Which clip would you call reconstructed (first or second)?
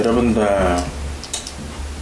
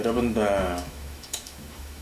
second